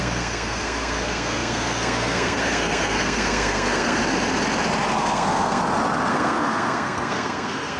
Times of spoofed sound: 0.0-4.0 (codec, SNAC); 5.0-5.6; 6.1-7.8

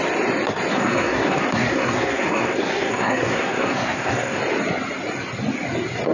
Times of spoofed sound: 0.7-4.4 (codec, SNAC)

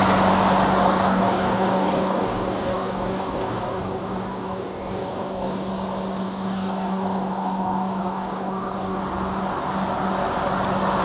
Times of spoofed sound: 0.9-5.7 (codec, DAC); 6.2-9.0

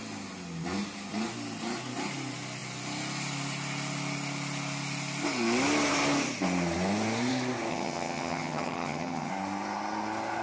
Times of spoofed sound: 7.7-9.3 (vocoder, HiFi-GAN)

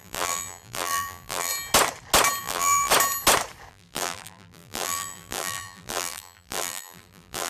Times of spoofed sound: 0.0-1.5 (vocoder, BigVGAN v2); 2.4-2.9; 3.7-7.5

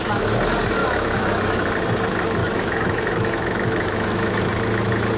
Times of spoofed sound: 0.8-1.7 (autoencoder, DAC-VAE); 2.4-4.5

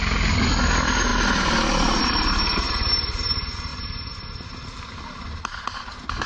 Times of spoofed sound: none